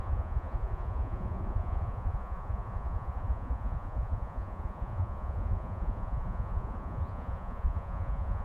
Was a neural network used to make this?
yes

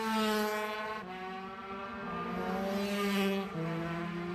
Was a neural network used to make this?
no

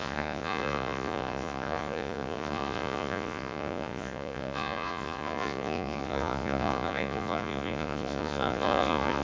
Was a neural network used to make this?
yes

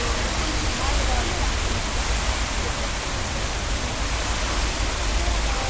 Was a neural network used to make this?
no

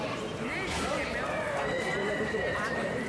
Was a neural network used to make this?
yes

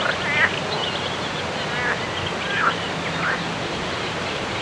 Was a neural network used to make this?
no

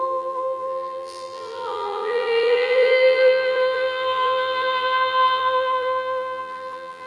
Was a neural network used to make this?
yes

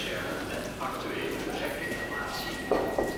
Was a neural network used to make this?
yes